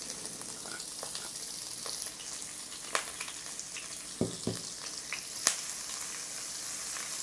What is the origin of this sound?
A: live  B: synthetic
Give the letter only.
A